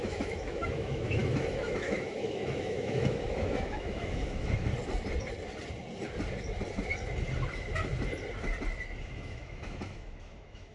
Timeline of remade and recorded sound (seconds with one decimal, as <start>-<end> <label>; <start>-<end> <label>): 0.0-4.7 remade; 4.7-9.0 recorded; 9.0-10.7 remade